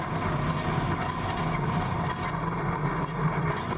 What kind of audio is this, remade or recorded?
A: recorded